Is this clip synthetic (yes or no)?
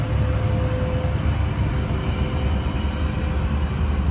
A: no